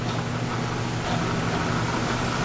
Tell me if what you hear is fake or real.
real